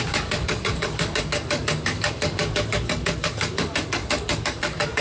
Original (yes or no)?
no